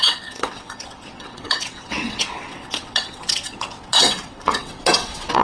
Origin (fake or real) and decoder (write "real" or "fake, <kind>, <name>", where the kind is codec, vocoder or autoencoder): fake, vocoder, WaveNeXt